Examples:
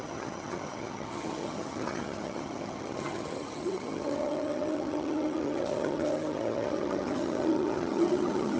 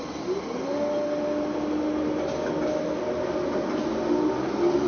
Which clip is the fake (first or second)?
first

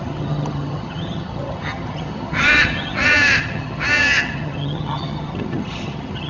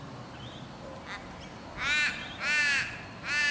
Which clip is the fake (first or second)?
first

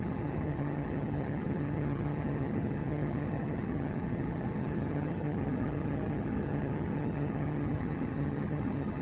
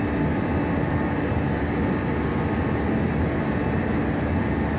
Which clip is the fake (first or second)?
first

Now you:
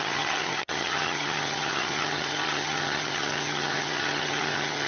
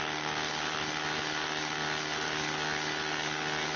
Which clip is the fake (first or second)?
first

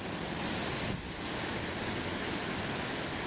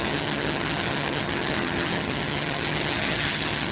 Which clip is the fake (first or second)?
second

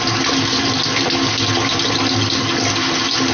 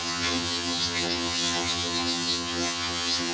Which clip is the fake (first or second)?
second